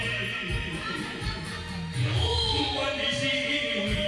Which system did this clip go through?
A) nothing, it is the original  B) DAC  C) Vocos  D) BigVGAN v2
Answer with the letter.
A